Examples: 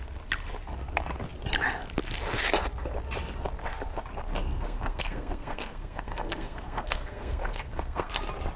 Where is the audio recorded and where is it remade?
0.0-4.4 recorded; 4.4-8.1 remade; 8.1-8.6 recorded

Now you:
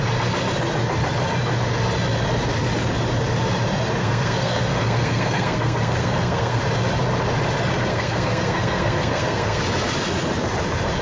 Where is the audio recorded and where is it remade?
0.0-4.0 recorded; 4.0-6.6 remade; 6.6-7.9 recorded; 7.9-9.6 remade; 9.6-11.0 recorded

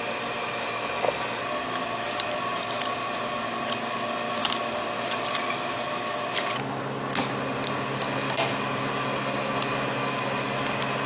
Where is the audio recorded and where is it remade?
0.0-11.1 recorded

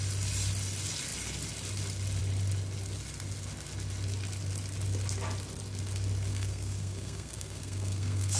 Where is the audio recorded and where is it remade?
0.0-6.3 recorded; 6.3-8.4 remade

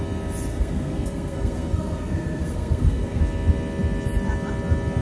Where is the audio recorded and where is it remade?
0.0-0.5 recorded; 0.5-3.2 remade; 3.2-5.0 recorded